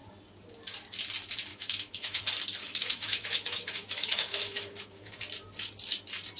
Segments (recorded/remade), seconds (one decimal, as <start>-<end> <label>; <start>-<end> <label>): 0.0-1.5 recorded; 1.5-2.2 remade; 2.2-2.6 recorded; 2.6-5.2 remade; 5.2-6.4 recorded